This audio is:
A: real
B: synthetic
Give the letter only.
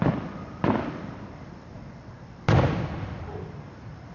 A